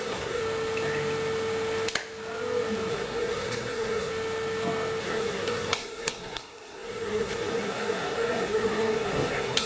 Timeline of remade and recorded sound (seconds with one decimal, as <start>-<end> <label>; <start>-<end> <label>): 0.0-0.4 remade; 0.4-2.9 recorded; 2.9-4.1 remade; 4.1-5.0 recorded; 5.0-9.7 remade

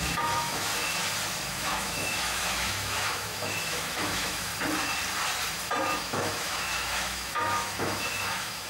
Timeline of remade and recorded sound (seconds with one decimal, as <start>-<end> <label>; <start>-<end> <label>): 0.0-0.7 remade; 0.7-1.5 recorded; 1.5-4.5 remade; 4.5-6.0 recorded; 6.0-8.7 remade

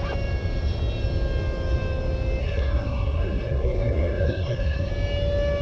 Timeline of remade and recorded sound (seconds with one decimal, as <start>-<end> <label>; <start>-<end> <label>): 0.0-2.4 recorded; 2.4-4.9 remade; 4.9-5.6 recorded

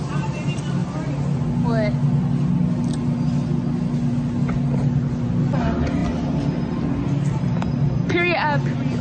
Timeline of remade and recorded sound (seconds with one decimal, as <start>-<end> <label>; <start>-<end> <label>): 0.0-9.0 recorded

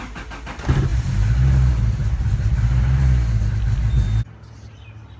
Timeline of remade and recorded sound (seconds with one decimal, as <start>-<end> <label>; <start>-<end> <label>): 0.0-5.2 recorded

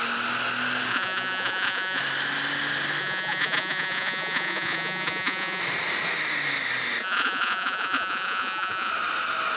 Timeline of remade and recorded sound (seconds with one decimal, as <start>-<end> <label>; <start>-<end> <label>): 0.0-0.9 recorded; 0.9-2.0 remade; 2.0-3.0 recorded; 3.0-5.6 remade; 5.6-7.0 recorded; 7.0-8.9 remade; 8.9-9.6 recorded

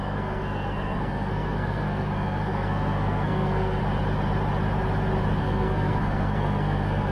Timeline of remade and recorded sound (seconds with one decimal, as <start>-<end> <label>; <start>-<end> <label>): 0.0-3.8 remade; 3.8-5.4 recorded; 5.4-7.1 remade

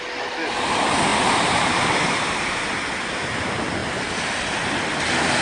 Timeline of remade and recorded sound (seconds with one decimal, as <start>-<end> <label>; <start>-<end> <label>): 0.0-1.1 recorded; 1.1-2.6 remade; 2.6-5.4 recorded